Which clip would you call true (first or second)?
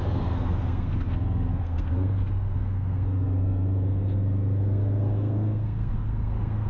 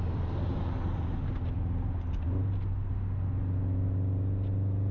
second